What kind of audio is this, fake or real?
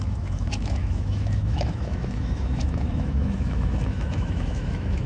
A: fake